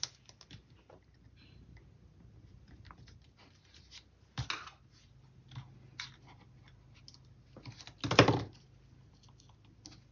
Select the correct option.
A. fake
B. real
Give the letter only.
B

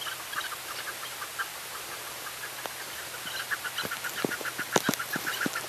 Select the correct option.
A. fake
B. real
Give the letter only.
B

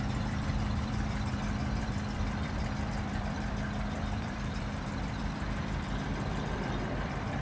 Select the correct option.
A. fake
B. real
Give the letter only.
A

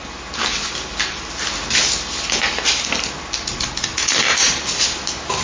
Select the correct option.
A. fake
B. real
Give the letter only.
B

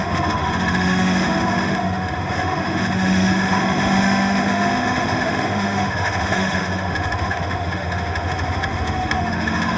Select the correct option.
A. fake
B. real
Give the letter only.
A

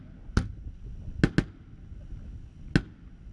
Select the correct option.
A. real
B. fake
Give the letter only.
A